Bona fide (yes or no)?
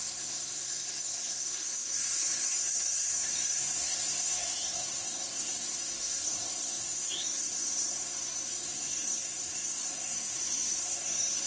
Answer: no